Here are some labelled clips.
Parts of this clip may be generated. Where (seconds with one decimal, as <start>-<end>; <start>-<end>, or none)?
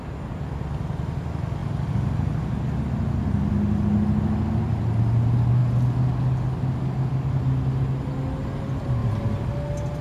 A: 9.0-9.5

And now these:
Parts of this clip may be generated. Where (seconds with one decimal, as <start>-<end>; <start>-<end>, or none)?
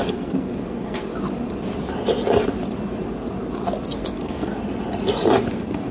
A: 0.0-1.1; 3.9-4.5; 5.5-5.9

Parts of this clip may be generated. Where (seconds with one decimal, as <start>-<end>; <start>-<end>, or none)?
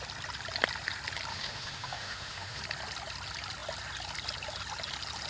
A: 1.3-2.6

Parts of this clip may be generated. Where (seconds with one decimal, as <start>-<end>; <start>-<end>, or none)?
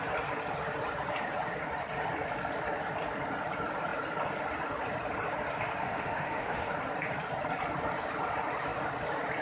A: 5.8-6.7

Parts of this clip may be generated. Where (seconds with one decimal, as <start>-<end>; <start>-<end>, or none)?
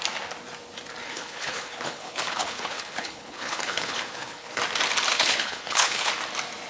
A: 1.0-4.6; 5.1-6.1